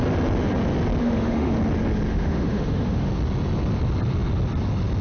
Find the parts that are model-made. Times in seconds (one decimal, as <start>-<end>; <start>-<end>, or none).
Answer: 1.0-1.5; 2.1-3.1

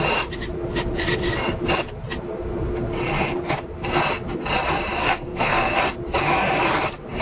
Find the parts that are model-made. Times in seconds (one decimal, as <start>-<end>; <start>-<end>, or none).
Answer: 5.0-5.8

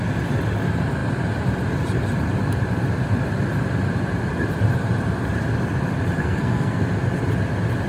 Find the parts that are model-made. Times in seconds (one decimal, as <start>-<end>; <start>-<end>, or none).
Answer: 6.2-6.8

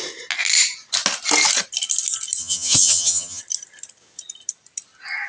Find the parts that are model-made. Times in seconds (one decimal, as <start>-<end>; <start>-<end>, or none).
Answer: 2.4-3.4